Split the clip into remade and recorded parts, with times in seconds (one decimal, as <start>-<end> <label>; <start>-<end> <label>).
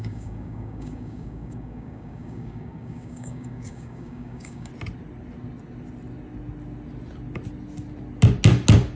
0.0-4.7 remade; 4.7-9.0 recorded